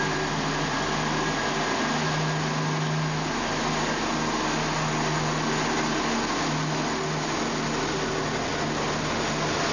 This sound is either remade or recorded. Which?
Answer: recorded